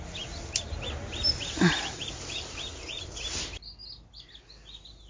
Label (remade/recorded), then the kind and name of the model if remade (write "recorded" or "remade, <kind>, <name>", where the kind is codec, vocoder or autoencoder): recorded